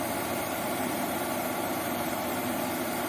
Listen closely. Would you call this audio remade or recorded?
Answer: remade